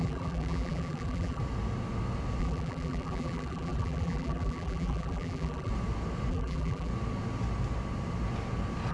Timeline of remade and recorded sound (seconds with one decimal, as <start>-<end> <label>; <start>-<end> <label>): 0.0-1.4 remade; 1.4-2.4 recorded; 2.4-5.7 remade; 5.7-6.3 recorded; 6.3-6.9 remade; 6.9-8.9 recorded